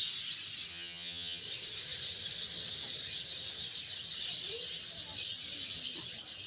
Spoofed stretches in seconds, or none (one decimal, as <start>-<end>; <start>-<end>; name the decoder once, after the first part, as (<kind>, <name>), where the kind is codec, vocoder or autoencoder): 0.7-1.4 (vocoder, HiFi-GAN)